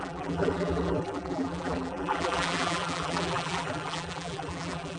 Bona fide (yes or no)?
no